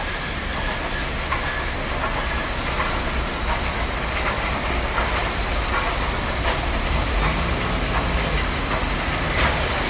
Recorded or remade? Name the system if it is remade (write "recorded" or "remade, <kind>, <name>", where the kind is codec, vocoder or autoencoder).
recorded